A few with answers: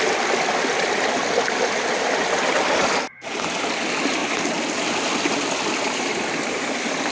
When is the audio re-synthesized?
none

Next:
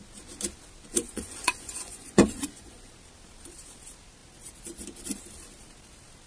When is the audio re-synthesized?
0.9-2.9 (vocoder, Vocos)

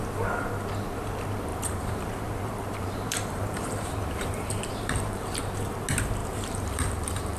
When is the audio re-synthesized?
1.5-5.4 (vocoder, BigVGAN v2); 6.2-7.4

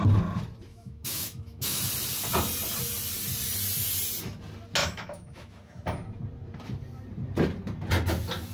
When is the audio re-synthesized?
0.7-1.8 (autoencoder, DAC-VAE); 4.8-5.8